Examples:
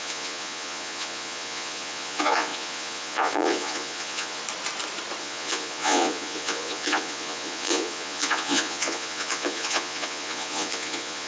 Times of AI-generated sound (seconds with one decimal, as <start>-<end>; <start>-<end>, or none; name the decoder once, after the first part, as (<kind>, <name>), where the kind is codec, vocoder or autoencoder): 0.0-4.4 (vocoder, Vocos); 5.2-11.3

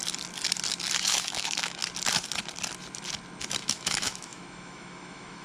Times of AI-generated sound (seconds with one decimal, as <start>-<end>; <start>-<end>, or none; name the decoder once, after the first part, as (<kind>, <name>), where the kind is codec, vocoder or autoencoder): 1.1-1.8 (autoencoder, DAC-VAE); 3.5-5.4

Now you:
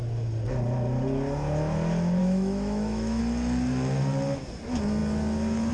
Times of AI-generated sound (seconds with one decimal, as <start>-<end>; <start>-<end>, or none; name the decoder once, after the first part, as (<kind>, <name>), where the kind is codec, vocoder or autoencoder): 2.2-3.2 (autoencoder, DAC-VAE)